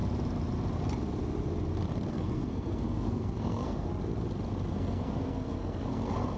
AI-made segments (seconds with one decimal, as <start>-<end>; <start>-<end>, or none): 2.1-3.9; 4.7-6.4